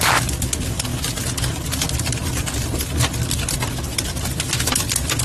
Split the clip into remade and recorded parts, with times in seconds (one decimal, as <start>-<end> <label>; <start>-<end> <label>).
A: 0.0-5.2 recorded

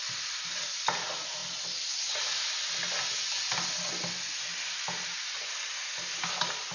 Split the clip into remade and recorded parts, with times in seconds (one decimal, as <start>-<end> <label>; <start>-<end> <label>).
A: 0.0-6.7 recorded

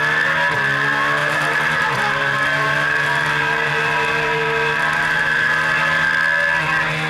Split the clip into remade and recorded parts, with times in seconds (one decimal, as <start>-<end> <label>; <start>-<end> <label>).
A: 0.0-1.2 recorded; 1.2-5.5 remade; 5.5-7.1 recorded

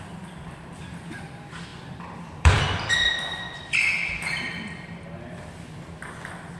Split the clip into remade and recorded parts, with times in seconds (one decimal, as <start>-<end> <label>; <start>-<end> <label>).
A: 0.0-1.7 recorded; 1.7-2.6 remade; 2.6-4.5 recorded; 4.5-5.4 remade; 5.4-6.6 recorded